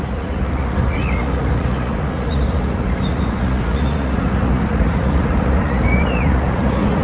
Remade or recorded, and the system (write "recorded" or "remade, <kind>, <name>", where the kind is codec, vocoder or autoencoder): remade, vocoder, Vocos